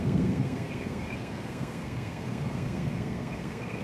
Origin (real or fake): fake